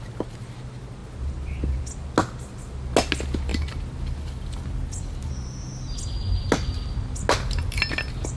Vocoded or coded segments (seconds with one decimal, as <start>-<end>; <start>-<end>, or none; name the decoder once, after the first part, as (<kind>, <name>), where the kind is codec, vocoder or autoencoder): none